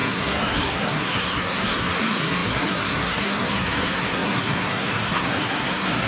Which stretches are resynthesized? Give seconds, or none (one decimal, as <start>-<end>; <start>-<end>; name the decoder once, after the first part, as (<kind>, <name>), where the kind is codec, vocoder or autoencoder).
0.0-6.1 (codec, SNAC)